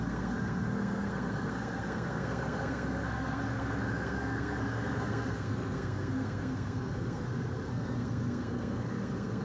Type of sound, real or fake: fake